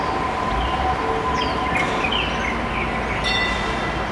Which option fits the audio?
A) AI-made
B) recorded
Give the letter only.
B